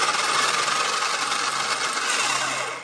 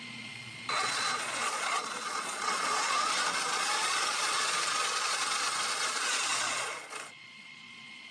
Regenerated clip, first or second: second